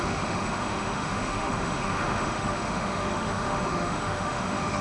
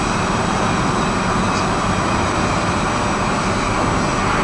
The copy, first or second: first